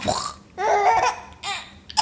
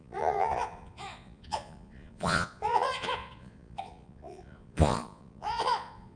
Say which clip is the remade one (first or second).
second